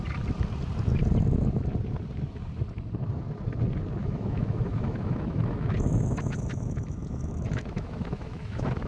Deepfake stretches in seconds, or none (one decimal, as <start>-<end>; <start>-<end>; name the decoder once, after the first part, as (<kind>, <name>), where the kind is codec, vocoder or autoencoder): 4.0-8.9 (autoencoder, DAC-VAE)